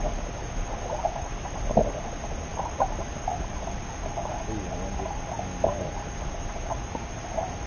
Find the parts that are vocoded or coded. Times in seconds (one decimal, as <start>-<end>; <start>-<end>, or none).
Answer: none